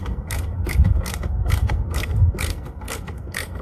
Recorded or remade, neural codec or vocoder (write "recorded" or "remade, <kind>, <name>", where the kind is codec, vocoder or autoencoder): remade, codec, SNAC